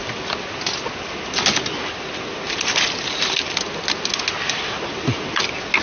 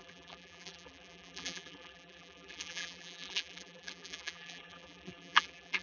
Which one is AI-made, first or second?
second